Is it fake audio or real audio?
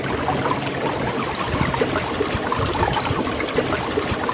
real